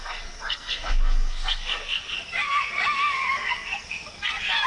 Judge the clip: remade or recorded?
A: remade